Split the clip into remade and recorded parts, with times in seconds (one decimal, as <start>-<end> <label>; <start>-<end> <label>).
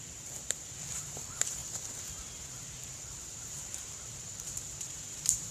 0.0-1.6 remade; 1.6-2.6 recorded; 2.6-5.5 remade